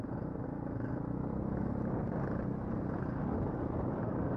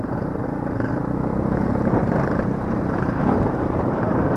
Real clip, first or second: first